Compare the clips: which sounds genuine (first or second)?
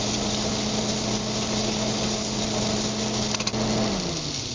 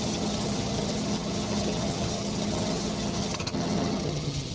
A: first